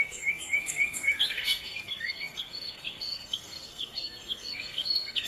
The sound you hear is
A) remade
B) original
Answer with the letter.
A